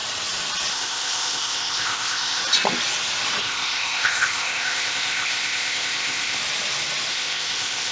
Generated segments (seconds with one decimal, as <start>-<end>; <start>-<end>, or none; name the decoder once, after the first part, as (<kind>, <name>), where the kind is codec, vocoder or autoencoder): 0.7-2.4 (codec, ZipCodec); 3.4-6.4; 7.1-7.9